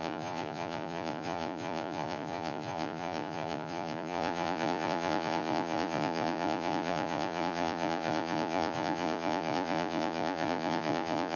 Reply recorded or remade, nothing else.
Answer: remade